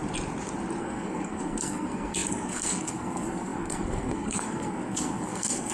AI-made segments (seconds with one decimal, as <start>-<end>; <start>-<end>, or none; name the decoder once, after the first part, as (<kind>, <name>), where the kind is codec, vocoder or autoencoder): 0.8-5.7 (codec, SNAC)